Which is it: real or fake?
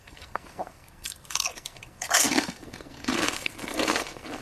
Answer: fake